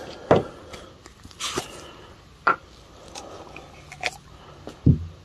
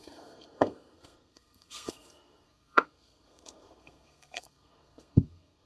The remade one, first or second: second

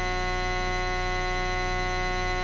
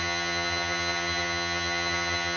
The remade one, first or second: second